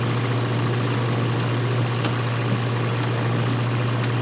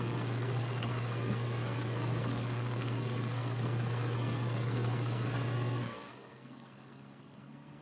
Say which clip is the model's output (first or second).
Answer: second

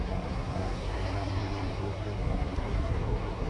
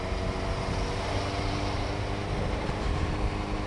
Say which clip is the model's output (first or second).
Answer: first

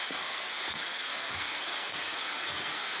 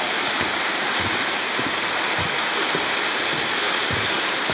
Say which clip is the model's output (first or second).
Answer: first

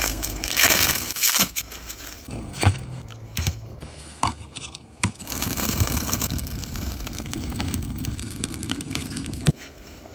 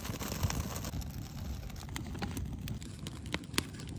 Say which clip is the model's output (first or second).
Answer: first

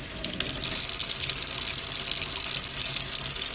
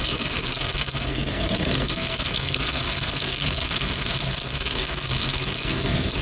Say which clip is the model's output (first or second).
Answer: second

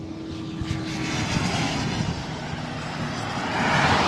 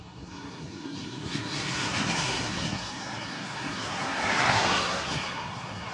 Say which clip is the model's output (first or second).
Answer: second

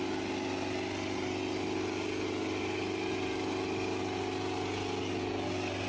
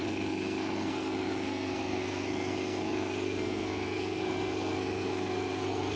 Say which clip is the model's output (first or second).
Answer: second